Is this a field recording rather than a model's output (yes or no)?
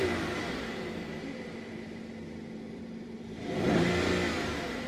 no